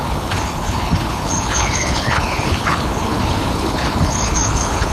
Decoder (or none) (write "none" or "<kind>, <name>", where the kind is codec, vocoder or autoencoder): codec, HILCodec